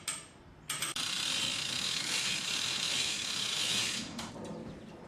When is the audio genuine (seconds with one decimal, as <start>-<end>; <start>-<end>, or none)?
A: 0.0-1.6; 4.3-5.1